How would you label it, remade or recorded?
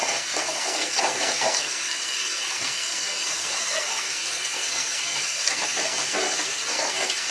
remade